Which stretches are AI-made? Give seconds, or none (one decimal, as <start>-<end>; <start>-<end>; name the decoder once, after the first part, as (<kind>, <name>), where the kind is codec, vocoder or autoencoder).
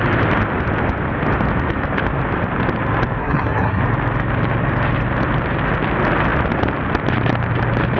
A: 3.2-3.8 (codec, SNAC)